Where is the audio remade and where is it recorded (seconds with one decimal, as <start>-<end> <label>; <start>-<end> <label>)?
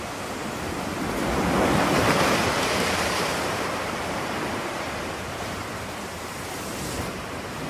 0.0-2.5 recorded; 2.5-7.1 remade; 7.1-7.7 recorded